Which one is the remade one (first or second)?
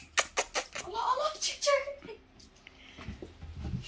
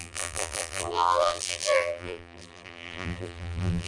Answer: second